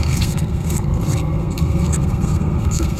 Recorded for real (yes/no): no